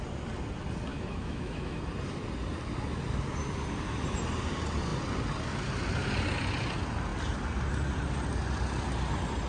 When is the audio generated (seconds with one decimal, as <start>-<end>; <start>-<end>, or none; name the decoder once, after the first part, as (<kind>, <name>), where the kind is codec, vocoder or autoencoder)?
0.9-1.8 (autoencoder, DAC-VAE)